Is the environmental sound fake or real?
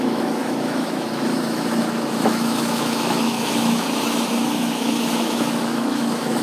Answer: fake